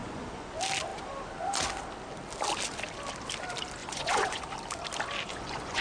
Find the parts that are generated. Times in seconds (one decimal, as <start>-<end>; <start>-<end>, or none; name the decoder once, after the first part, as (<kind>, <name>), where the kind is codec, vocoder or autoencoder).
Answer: 0.0-0.5 (vocoder, Vocos); 3.8-4.4; 5.3-5.8